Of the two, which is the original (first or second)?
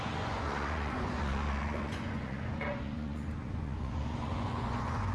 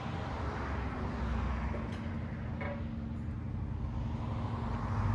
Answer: second